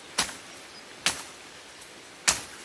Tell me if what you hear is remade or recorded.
recorded